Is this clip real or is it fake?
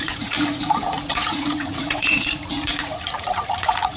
fake